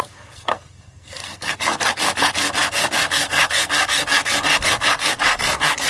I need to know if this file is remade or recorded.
remade